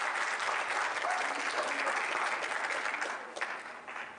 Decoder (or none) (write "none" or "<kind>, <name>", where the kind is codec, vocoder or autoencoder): none